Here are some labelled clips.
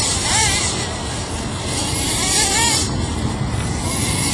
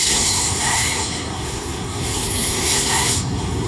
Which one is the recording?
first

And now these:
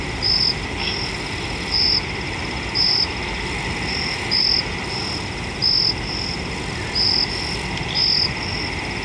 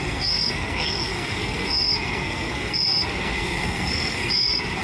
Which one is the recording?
first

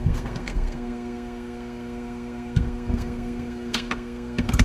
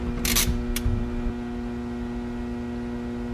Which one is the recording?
second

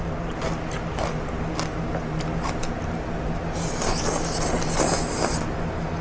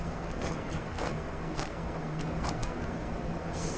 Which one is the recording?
first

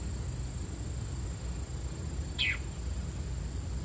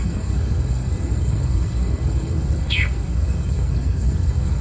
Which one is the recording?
first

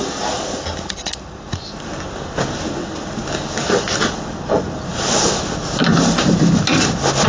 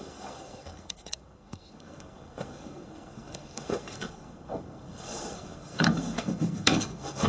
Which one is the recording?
first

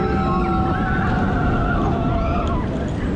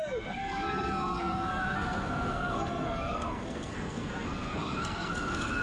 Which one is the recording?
first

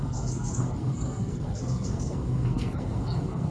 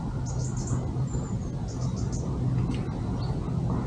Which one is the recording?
second